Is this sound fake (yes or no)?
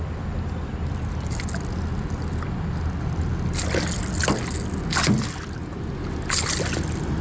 no